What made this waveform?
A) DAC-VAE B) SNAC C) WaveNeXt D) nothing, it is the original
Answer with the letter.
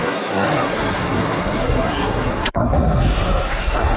B